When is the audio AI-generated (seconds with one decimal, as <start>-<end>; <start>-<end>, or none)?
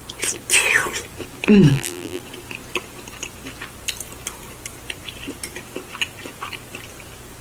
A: 1.7-2.2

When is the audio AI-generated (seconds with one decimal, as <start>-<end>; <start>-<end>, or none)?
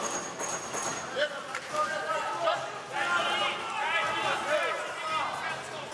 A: none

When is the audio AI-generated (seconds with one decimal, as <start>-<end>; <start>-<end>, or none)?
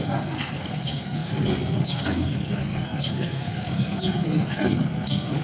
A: 0.0-5.4